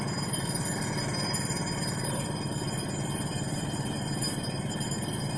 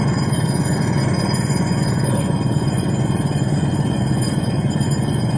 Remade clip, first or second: second